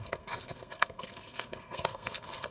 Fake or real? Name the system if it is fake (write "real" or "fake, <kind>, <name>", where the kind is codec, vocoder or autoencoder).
fake, codec, SNAC